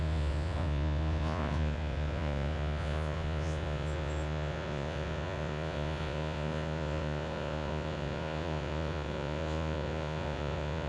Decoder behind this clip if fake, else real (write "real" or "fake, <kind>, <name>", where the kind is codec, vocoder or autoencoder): fake, vocoder, Vocos